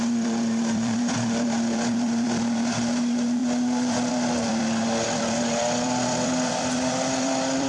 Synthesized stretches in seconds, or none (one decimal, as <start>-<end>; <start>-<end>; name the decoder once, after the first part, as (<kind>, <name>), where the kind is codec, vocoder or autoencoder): 0.0-7.7 (vocoder, BigVGAN v2)